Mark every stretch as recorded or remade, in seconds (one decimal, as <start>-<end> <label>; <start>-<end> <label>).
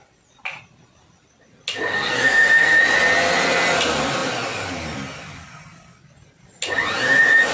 0.0-1.9 recorded; 1.9-2.8 remade; 2.8-7.5 recorded